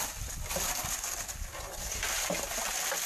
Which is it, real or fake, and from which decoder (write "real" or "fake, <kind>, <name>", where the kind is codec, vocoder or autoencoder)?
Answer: real